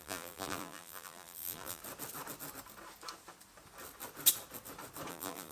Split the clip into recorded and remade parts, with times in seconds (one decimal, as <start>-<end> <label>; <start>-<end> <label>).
0.0-1.8 remade; 1.8-5.1 recorded; 5.1-5.5 remade